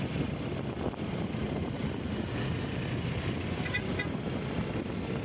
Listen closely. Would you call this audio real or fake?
real